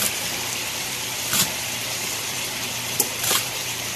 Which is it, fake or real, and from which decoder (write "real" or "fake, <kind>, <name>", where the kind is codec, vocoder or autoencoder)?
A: fake, vocoder, BigVGAN v2